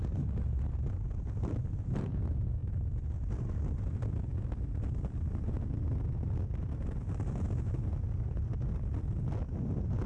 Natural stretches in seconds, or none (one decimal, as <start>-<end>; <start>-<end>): 0.0-10.1